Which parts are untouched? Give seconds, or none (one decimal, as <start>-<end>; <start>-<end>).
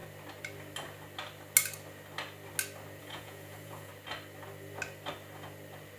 0.0-3.0; 3.9-6.0